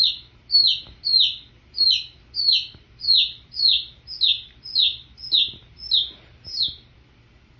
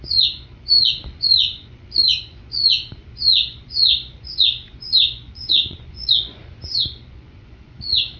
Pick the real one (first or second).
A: first